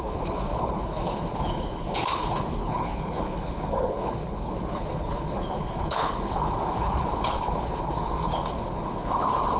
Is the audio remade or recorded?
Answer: remade